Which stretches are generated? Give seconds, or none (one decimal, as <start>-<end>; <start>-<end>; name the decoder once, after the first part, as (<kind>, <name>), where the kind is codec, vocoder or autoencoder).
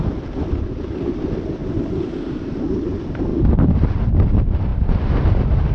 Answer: 0.0-1.6 (vocoder, BigVGAN v2); 2.6-3.3; 4.1-4.7; 5.3-5.7